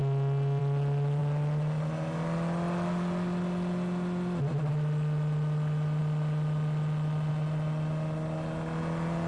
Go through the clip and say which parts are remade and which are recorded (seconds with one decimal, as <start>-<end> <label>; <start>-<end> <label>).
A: 0.0-9.3 recorded